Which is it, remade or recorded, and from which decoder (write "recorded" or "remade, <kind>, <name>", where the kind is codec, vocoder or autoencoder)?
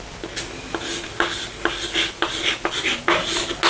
recorded